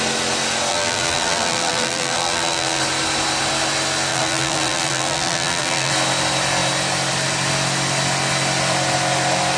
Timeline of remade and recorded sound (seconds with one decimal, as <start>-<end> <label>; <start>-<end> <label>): 0.0-0.7 recorded; 0.7-2.8 remade; 2.8-4.1 recorded; 4.1-5.9 remade; 5.9-9.6 recorded